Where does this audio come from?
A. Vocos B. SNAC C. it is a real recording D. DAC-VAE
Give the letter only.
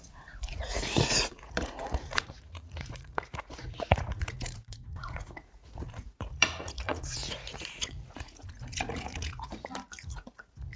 A